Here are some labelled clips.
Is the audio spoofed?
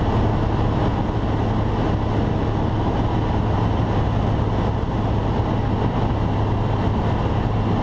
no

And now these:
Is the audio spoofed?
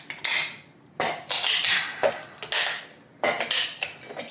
no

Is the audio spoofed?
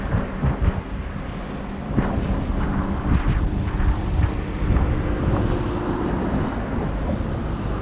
no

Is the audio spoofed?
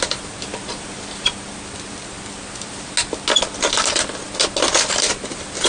no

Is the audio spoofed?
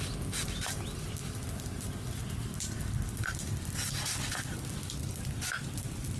no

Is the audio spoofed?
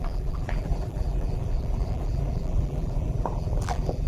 yes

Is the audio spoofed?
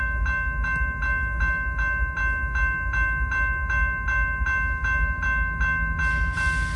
no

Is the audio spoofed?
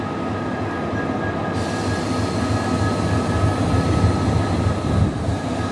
no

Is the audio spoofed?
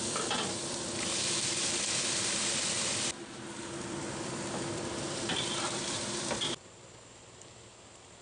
yes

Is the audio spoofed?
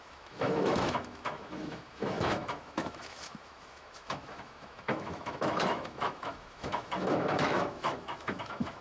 yes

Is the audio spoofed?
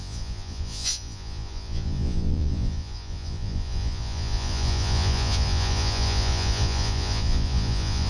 yes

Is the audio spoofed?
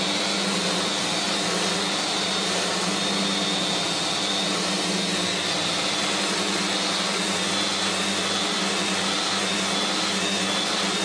no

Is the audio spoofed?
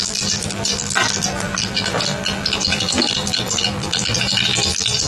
yes